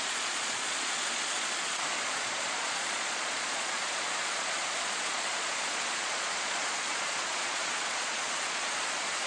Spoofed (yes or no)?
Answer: yes